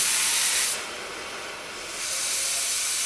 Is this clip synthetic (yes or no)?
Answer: no